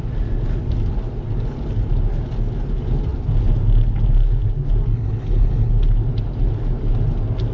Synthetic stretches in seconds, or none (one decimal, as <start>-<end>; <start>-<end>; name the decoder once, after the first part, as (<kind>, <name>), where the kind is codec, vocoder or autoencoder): 4.9-5.7 (codec, HILCodec)